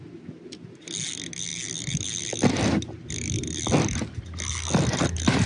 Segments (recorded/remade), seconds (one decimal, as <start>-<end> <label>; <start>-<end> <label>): 0.0-5.5 recorded